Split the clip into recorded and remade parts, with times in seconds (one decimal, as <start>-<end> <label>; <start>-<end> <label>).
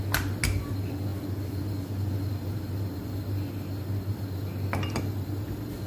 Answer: 0.0-5.9 recorded